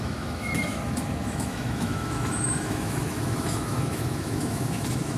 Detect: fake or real fake